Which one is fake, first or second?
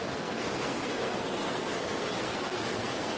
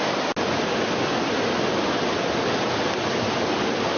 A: first